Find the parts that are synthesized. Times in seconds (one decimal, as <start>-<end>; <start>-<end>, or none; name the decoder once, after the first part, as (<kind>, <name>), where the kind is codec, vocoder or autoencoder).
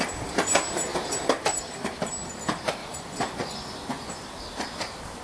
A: 2.8-4.1 (vocoder, Vocos)